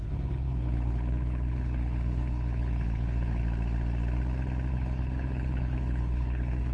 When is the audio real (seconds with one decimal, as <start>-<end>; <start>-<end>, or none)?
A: 3.4-4.7